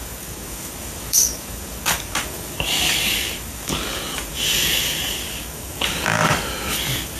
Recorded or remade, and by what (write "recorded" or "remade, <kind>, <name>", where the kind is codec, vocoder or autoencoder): remade, codec, DAC